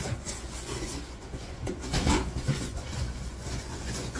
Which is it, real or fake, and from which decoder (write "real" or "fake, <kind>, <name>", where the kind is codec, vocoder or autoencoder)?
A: fake, vocoder, Vocos